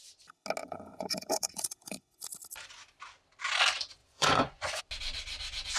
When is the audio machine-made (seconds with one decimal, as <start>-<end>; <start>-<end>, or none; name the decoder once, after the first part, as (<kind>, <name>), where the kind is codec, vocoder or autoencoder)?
0.6-2.2 (vocoder, Vocos); 4.0-4.8